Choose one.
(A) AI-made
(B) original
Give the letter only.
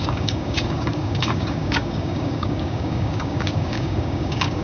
A